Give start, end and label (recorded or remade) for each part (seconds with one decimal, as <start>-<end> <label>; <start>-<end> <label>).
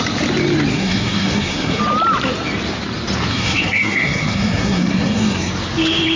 0.0-0.7 recorded; 0.7-1.8 remade; 1.8-3.3 recorded; 3.3-5.5 remade; 5.5-6.2 recorded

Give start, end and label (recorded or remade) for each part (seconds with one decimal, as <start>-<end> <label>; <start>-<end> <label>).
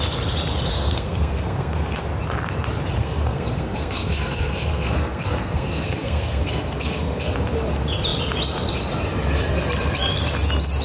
0.0-0.7 recorded; 0.7-2.0 remade; 2.0-3.0 recorded; 3.0-7.3 remade; 7.3-10.8 recorded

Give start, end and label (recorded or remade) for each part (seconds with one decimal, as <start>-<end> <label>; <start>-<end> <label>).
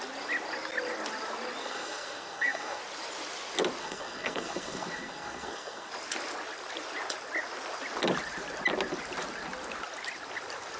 0.0-1.6 recorded; 1.6-2.8 remade; 2.8-3.8 recorded; 3.8-5.9 remade; 5.9-10.8 recorded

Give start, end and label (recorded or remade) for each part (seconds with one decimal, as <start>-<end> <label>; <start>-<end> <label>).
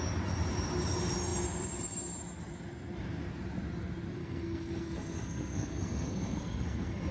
0.0-4.2 recorded; 4.2-7.1 remade